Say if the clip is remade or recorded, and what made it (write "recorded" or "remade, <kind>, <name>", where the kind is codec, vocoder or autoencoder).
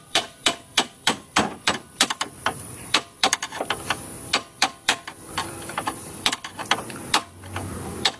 remade, vocoder, BigVGAN v2